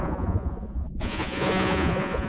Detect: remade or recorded remade